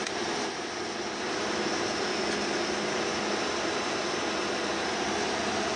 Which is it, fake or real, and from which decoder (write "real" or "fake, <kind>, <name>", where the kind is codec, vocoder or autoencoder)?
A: real